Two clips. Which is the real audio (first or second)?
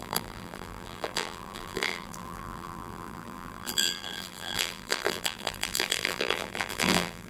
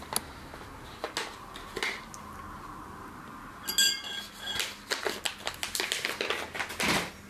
second